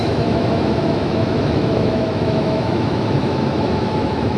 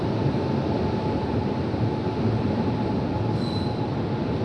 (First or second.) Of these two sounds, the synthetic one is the first